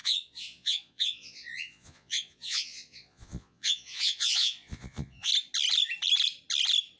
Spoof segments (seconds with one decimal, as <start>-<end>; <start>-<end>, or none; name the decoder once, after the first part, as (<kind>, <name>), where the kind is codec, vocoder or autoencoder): 0.0-5.3 (vocoder, Vocos)